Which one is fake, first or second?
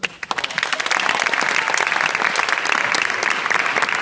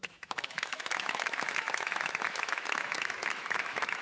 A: second